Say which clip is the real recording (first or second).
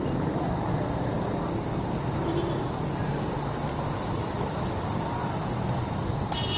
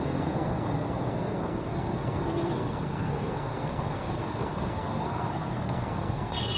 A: first